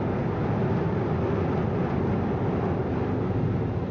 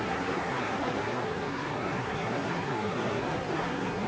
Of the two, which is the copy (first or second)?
second